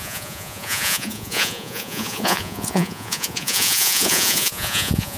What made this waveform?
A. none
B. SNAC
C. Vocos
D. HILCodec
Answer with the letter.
C